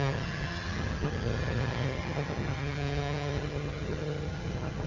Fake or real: fake